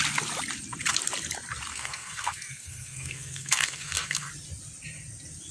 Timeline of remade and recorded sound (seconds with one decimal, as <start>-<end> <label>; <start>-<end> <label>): 0.0-1.7 recorded; 1.7-4.3 remade; 4.3-5.5 recorded